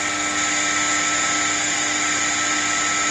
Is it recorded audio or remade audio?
recorded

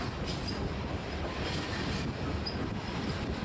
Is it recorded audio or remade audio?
recorded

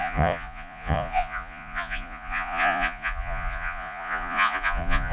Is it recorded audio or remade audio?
remade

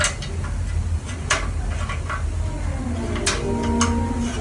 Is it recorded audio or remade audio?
recorded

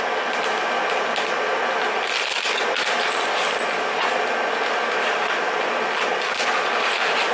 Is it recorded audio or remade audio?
recorded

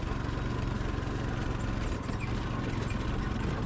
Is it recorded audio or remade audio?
recorded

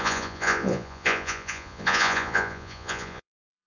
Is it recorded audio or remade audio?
remade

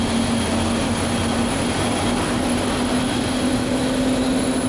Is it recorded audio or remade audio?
recorded